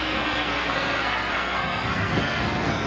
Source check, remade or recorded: remade